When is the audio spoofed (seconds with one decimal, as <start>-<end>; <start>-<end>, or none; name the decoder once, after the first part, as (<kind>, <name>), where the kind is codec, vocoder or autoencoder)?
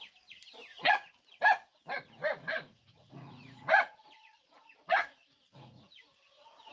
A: 0.7-1.4 (vocoder, Vocos); 2.4-6.7